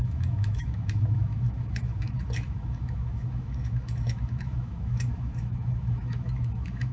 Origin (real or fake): fake